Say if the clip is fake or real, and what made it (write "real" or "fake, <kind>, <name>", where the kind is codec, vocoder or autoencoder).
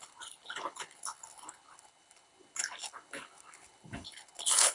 fake, codec, HILCodec